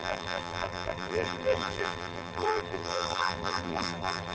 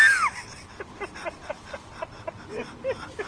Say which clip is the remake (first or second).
first